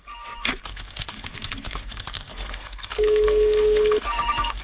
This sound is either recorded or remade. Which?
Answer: remade